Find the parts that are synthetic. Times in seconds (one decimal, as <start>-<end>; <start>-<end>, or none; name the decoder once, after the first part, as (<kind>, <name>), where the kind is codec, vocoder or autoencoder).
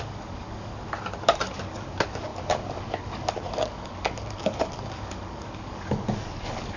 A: 0.0-0.7 (codec, DAC); 1.2-6.8